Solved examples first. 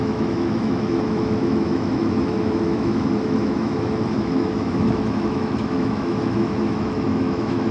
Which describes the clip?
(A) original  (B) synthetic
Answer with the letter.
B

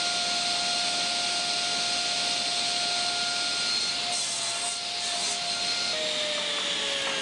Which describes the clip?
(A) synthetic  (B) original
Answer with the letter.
B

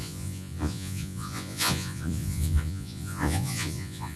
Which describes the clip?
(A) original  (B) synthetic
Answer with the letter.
B